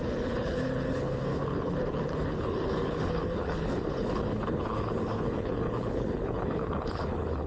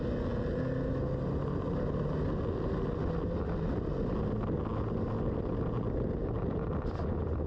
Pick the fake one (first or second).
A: first